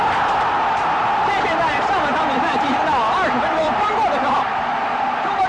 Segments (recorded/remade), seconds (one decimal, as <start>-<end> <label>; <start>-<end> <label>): 0.0-0.5 remade; 0.5-2.1 recorded; 2.1-3.9 remade; 3.9-5.5 recorded